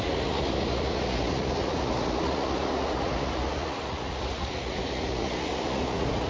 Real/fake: fake